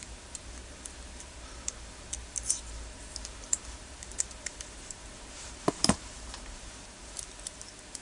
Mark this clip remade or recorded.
remade